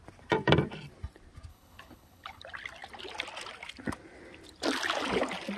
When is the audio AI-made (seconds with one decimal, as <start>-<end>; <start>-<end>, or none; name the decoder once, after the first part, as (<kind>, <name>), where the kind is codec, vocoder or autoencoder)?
1.5-2.4 (codec, HILCodec)